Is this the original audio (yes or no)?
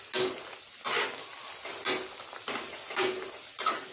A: yes